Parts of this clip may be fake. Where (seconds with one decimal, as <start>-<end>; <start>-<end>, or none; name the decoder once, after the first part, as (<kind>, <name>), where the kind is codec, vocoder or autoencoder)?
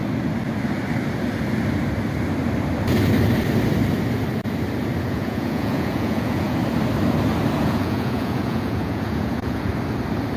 5.0-6.6 (vocoder, Vocos); 7.6-9.7